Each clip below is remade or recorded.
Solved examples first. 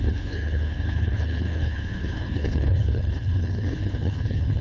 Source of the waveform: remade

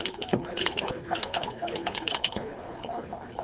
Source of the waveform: remade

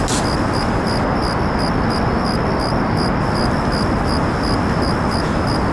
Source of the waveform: recorded